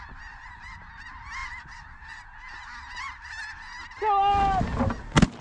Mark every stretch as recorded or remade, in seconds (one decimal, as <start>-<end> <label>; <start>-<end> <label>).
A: 0.0-5.4 recorded